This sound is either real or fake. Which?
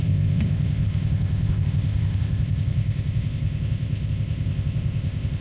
fake